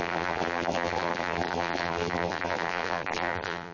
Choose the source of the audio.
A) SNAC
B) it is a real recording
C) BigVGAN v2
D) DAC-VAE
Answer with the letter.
C